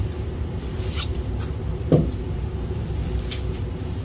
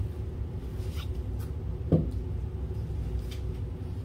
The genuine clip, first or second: second